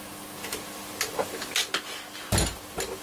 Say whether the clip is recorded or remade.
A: recorded